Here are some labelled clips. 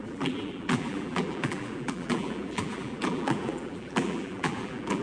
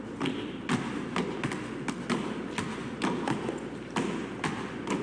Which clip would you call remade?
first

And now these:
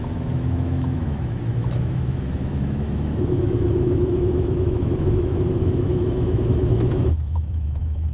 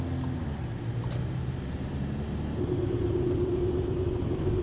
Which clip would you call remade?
first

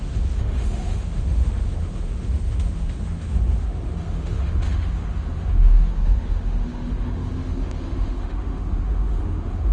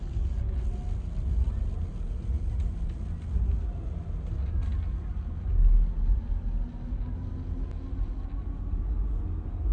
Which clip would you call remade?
first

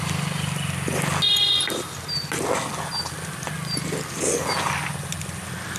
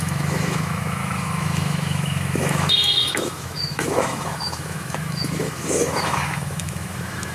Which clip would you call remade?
second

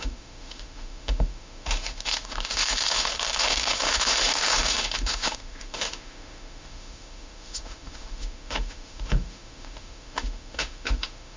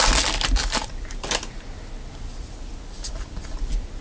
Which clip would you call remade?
first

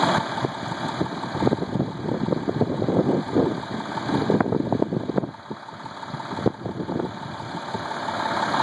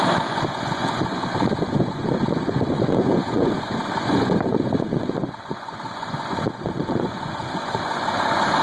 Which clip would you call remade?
second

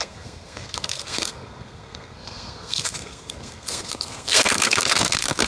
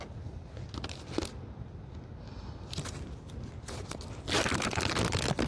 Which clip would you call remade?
first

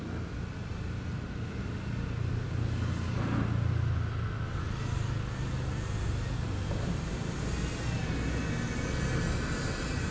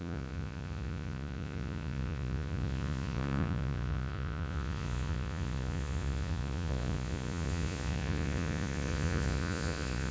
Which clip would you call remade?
second